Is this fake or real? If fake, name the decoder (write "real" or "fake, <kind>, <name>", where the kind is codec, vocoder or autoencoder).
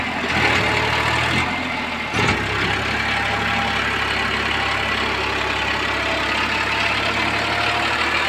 real